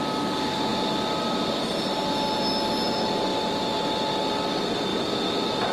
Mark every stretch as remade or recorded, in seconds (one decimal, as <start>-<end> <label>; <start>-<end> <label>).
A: 0.0-5.7 recorded